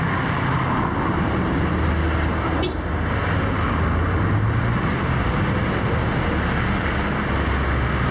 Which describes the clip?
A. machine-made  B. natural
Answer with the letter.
B